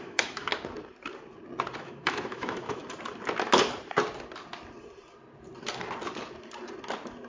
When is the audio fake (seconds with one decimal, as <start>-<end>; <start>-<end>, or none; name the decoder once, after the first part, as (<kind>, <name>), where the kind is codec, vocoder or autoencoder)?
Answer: 0.0-0.5 (autoencoder, DAC-VAE); 1.8-2.8